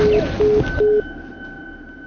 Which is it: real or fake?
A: real